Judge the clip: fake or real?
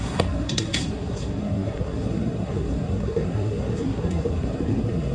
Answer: fake